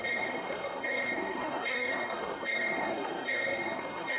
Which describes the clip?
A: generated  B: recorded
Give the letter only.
A